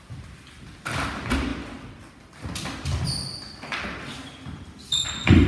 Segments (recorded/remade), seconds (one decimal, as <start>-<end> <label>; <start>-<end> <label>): 0.0-5.5 recorded